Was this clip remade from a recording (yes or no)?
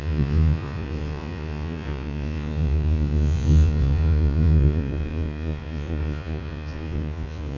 yes